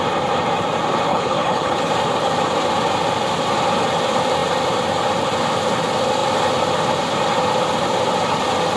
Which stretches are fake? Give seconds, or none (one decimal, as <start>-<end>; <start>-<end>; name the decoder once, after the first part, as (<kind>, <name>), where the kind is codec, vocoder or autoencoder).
1.1-1.9 (codec, HILCodec)